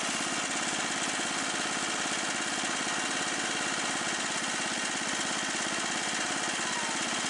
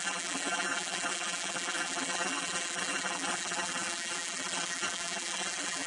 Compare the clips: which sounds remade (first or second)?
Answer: second